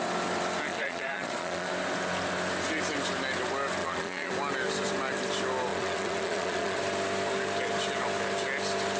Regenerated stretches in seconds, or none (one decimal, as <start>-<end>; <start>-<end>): 0.7-1.7; 3.8-4.3; 5.7-6.8